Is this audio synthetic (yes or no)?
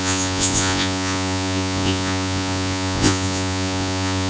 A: yes